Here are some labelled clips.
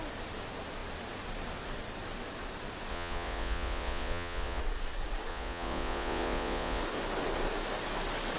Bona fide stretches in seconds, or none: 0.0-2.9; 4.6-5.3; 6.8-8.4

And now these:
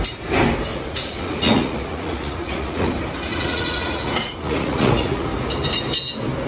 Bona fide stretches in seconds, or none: 0.0-0.7; 2.9-3.3; 5.3-6.5

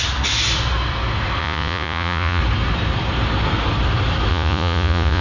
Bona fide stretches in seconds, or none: 0.0-1.4; 2.4-4.3

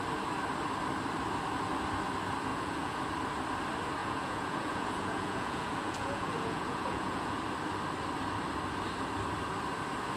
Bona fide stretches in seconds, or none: 0.0-2.5; 3.0-4.0; 7.4-10.2

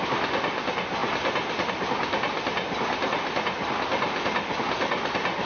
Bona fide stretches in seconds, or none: 0.0-5.5

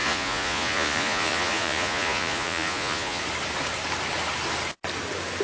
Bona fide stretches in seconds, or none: 3.2-5.4